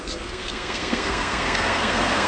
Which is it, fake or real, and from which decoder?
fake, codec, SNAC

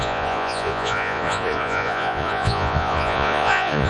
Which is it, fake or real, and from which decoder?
fake, vocoder, Vocos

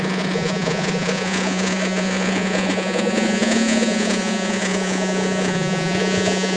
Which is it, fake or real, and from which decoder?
fake, vocoder, Vocos